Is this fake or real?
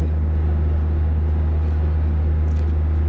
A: real